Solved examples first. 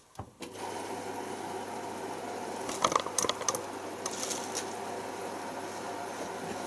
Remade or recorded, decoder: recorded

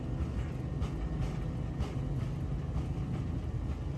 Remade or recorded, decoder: recorded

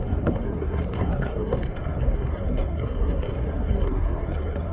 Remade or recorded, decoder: remade, codec, SNAC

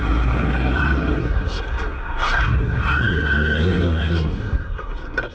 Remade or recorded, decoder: remade, codec, SNAC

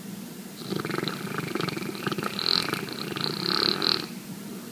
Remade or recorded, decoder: recorded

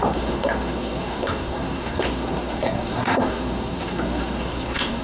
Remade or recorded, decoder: remade, codec, SNAC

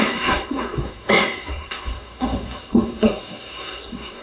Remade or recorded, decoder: remade, codec, SNAC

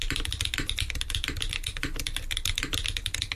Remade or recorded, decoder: recorded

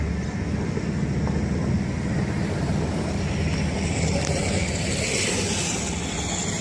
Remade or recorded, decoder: recorded